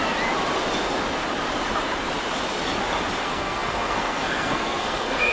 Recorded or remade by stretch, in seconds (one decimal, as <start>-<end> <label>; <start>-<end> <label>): 0.0-3.2 recorded; 3.2-5.3 remade